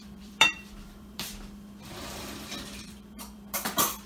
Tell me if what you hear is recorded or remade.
remade